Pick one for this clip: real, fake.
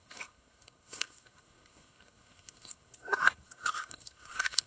fake